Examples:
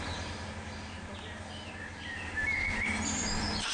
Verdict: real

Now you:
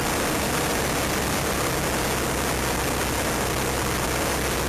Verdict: real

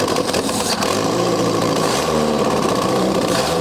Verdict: fake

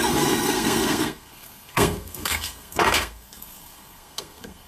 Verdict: fake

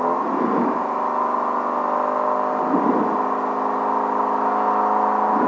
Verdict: real